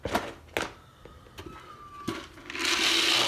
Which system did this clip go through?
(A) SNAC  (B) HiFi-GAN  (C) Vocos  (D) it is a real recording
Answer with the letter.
D